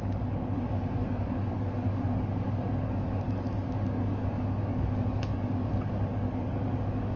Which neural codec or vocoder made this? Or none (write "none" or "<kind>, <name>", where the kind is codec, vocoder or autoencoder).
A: codec, DAC